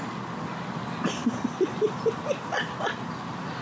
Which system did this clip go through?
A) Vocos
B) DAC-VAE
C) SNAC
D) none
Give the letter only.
D